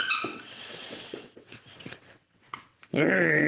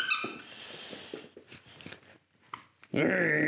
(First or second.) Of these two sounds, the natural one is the second